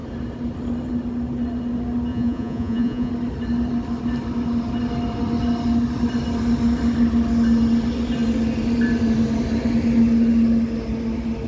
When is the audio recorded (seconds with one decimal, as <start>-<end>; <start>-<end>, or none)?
0.0-2.1; 3.1-11.5